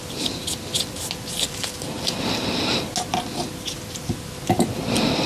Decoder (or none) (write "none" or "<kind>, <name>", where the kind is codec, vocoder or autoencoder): none